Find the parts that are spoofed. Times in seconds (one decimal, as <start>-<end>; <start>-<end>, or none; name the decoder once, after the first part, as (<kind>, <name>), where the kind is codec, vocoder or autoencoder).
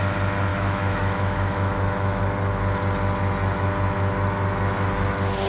0.5-2.2 (autoencoder, DAC-VAE)